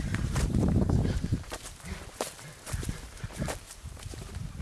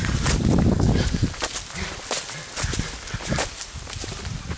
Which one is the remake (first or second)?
first